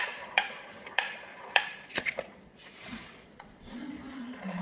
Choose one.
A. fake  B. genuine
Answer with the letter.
A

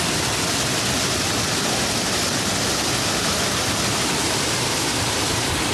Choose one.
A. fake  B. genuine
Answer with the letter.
B